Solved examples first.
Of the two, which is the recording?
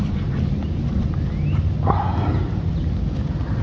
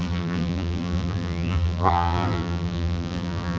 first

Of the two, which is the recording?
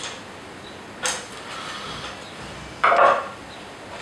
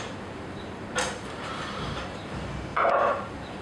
first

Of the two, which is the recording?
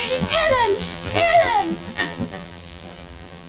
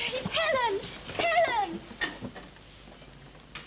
second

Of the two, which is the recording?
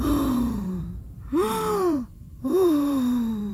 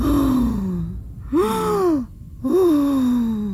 second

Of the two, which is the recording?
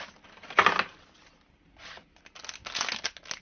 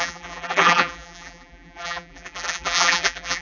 first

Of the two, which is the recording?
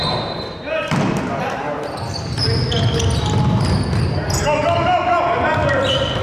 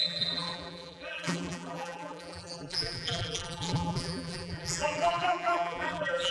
first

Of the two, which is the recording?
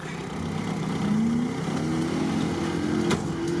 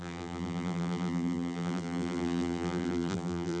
first